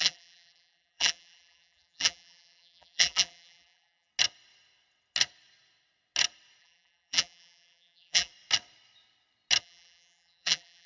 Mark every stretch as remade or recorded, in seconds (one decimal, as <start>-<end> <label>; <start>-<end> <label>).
0.0-4.1 remade; 4.1-6.6 recorded; 6.6-8.3 remade; 8.3-9.6 recorded; 9.6-10.9 remade